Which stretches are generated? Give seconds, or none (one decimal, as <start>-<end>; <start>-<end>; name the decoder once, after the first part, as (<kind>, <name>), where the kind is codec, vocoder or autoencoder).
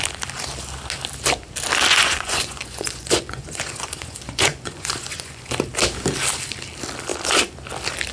1.9-5.5 (vocoder, Vocos)